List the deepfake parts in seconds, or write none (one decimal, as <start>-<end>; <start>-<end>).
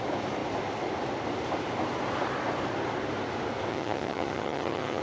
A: 3.7-5.0